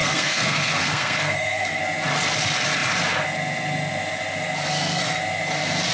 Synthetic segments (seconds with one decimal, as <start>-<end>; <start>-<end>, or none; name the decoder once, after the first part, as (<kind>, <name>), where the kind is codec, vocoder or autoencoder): 0.0-1.8 (codec, SNAC); 4.7-5.2